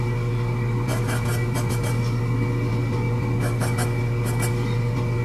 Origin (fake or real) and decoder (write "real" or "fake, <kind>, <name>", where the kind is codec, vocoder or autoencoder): real